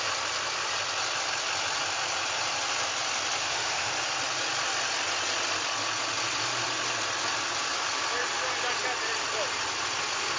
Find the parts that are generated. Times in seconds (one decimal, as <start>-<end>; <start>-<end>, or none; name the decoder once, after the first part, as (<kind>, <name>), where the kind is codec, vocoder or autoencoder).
3.4-3.9 (autoencoder, DAC-VAE)